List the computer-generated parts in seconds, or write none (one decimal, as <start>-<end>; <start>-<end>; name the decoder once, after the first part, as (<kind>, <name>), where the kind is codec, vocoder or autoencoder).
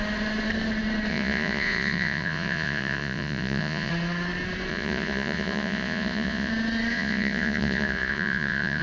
1.1-3.9 (vocoder, Vocos); 4.7-6.5; 6.9-8.8